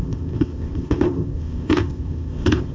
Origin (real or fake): fake